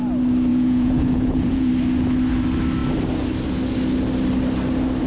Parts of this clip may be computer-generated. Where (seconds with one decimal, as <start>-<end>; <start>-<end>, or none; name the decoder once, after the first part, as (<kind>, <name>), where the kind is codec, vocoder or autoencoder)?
0.5-1.7 (vocoder, Vocos)